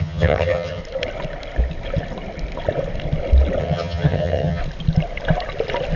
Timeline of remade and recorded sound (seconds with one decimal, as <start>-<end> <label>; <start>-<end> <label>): 0.0-0.8 remade; 0.8-3.6 recorded; 3.6-4.6 remade; 4.6-6.0 recorded